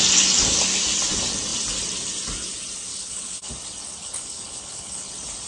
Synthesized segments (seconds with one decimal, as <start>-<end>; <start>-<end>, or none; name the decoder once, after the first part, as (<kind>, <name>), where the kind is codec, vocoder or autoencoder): 2.9-3.5 (codec, HILCodec); 4.0-5.1